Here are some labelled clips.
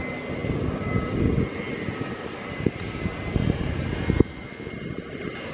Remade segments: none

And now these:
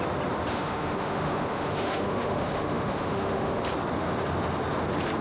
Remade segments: 0.5-3.6 (autoencoder, DAC-VAE)